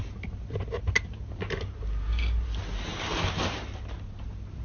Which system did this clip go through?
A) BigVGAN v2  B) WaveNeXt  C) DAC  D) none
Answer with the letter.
D